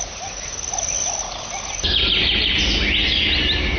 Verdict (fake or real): real